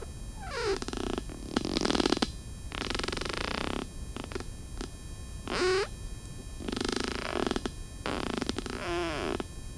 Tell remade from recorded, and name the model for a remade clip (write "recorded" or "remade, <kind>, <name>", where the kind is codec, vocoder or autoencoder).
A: recorded